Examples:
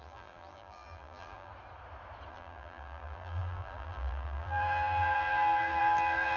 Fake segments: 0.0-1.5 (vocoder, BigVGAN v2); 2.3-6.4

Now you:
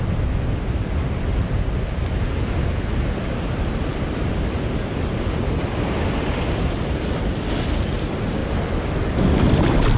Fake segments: none

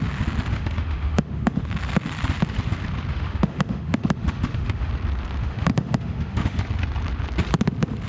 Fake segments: 0.5-1.7 (autoencoder, DAC-VAE); 3.1-4.9; 5.4-6.6

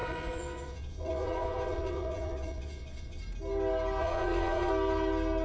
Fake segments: 0.0-3.2 (vocoder, Vocos); 4.0-4.7

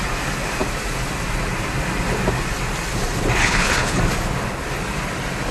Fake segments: 3.4-4.0 (codec, HILCodec)